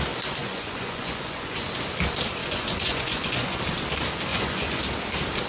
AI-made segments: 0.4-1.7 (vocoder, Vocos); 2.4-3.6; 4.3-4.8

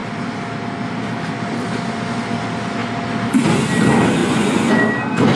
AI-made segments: 4.2-4.8 (vocoder, Vocos)

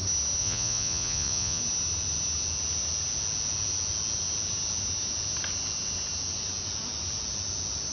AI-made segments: 0.4-1.6 (vocoder, Vocos)

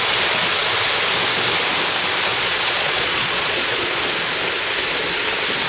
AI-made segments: 2.3-4.0 (vocoder, Vocos)

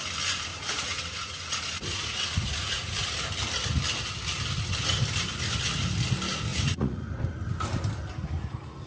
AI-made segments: 0.5-3.1 (vocoder, Vocos); 6.5-7.1

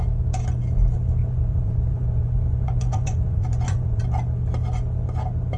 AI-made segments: 1.2-4.0 (vocoder, Vocos)